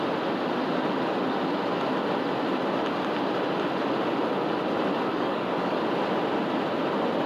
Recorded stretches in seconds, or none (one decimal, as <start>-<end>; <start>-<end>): 0.0-5.1; 5.8-7.3